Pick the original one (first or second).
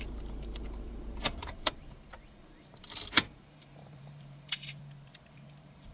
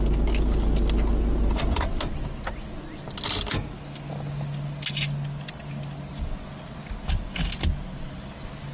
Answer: second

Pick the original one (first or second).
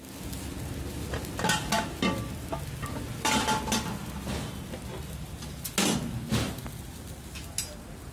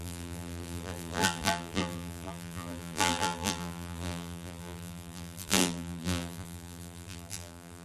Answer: first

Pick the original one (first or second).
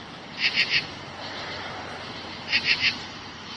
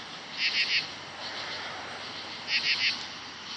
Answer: second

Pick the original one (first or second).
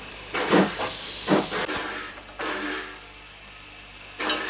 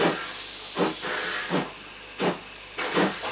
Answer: second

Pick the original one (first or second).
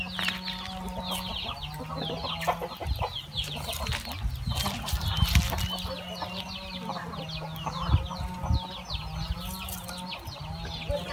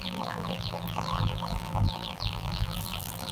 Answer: first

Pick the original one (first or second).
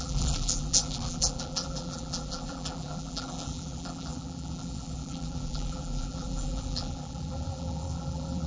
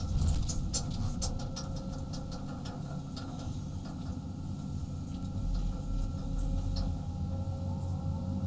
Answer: second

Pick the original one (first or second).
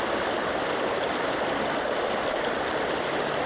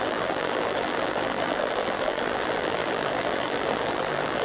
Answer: first